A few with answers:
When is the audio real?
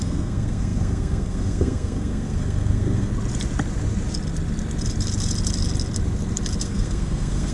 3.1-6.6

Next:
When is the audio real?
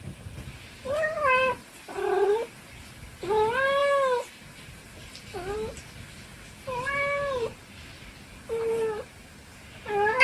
0.0-10.2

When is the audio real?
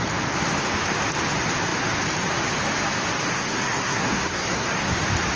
0.0-3.3; 5.0-5.4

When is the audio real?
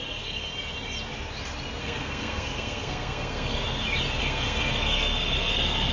0.5-1.8; 3.6-4.2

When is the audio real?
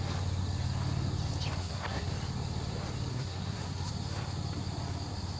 0.0-1.6; 2.1-3.1; 3.9-5.4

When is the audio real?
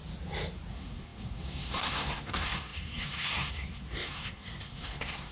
0.0-0.7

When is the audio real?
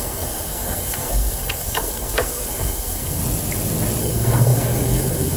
3.2-4.0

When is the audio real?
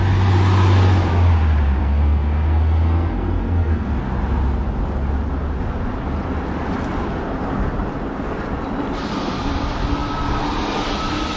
0.0-1.8; 4.0-11.4